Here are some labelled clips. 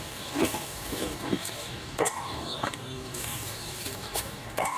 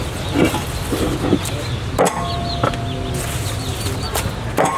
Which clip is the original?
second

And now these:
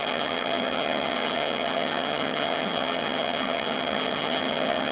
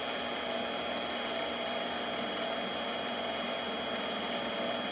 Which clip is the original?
second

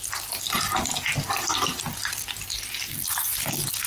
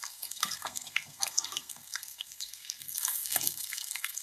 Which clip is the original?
first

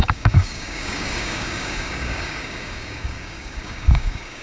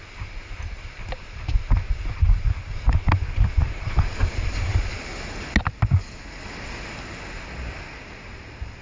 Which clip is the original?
second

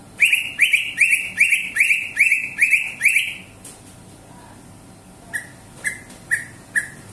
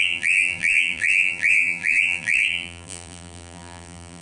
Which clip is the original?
first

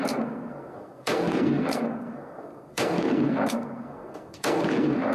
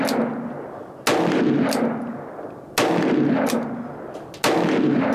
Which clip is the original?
second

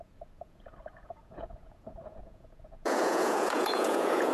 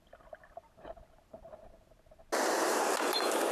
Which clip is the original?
second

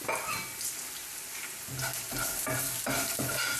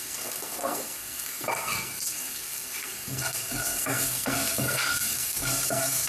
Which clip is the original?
first